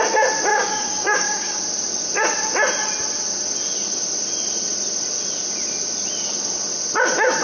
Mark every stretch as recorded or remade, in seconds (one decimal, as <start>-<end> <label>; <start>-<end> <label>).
0.0-0.5 recorded; 0.5-1.6 remade; 1.6-7.4 recorded